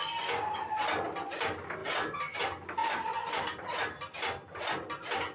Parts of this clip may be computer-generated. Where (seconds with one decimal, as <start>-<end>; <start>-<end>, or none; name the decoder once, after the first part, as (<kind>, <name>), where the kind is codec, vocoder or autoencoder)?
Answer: none